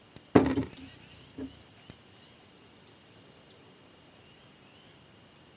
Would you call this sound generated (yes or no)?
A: no